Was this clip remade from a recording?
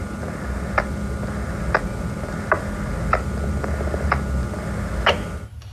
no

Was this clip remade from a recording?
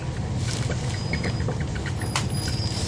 no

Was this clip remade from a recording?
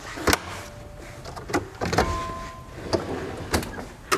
no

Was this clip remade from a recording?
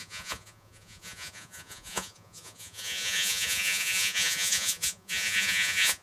yes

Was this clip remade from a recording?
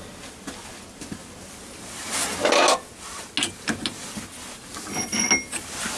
no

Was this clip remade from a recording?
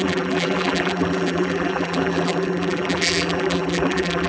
yes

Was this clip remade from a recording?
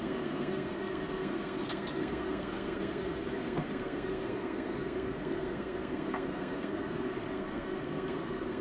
yes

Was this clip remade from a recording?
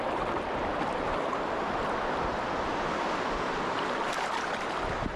no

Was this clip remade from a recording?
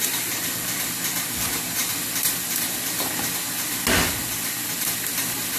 no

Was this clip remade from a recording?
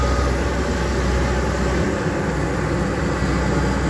no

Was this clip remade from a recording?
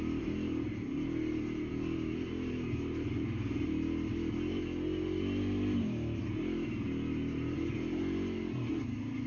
no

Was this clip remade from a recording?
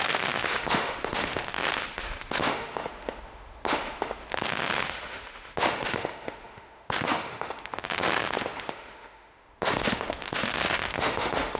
yes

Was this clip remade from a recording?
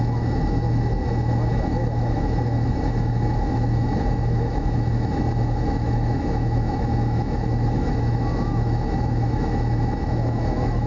yes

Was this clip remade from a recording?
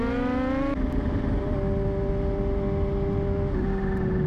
no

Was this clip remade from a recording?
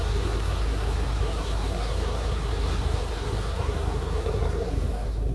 yes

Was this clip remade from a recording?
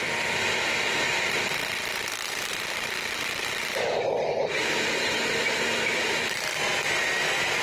yes